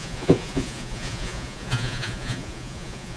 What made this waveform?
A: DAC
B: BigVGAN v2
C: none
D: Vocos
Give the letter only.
D